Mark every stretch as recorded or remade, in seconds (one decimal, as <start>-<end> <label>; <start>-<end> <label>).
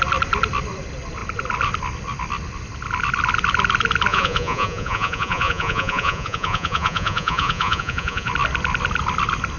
0.0-4.1 recorded; 4.1-8.3 remade; 8.3-9.6 recorded